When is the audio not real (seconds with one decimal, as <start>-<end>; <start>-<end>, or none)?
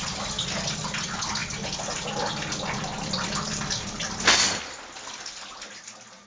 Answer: none